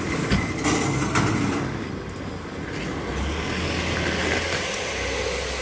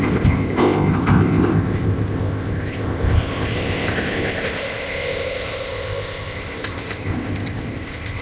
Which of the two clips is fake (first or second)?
second